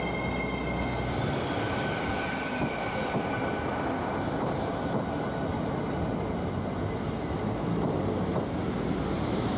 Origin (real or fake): real